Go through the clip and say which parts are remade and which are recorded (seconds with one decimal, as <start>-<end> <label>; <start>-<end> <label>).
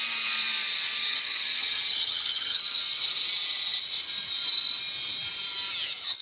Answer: 0.0-1.1 recorded; 1.1-2.8 remade; 2.8-6.2 recorded